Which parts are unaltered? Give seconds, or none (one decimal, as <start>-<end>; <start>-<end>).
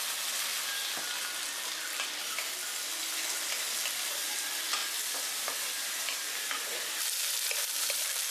0.0-4.8